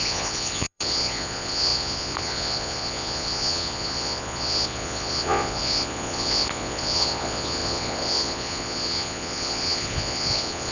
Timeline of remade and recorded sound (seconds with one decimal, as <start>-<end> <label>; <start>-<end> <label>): 0.0-10.7 remade